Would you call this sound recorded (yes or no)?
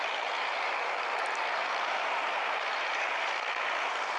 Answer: no